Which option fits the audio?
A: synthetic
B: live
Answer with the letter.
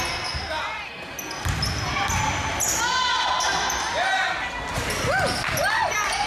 B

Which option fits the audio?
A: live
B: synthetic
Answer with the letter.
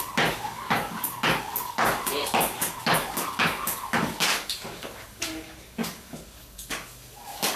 B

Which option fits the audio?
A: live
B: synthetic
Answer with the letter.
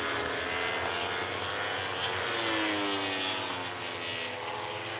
A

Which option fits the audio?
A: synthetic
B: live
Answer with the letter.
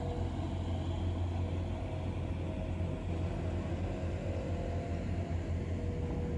B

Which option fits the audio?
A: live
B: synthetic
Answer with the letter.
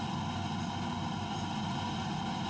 A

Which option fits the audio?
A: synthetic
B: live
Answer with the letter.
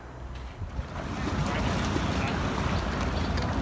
B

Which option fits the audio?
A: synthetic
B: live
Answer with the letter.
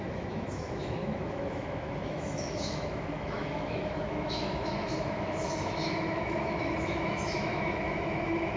A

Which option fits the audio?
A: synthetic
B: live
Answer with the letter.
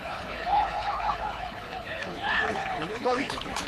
A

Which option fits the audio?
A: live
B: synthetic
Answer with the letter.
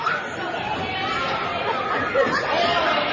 A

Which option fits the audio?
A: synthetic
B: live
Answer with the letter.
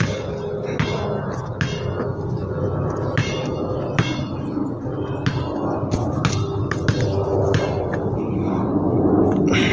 B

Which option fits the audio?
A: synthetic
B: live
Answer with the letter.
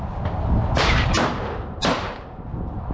B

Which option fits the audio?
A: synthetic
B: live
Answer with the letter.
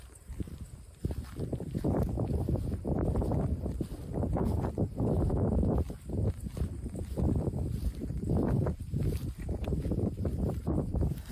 A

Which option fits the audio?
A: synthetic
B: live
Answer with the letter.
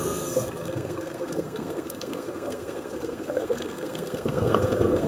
A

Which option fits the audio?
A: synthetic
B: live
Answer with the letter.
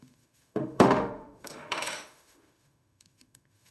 A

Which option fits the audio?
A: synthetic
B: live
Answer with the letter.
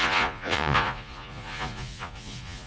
A